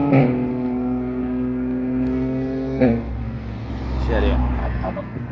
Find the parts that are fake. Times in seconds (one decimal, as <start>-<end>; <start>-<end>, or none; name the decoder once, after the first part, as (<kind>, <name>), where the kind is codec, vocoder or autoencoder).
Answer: 0.5-3.7 (codec, SNAC); 4.6-5.3